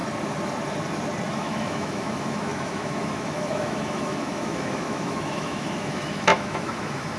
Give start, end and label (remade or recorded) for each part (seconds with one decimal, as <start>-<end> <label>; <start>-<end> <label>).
0.0-1.3 recorded; 1.3-7.2 remade